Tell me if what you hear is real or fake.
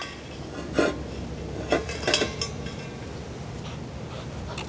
real